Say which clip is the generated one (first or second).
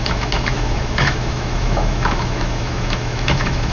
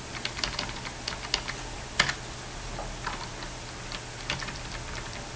first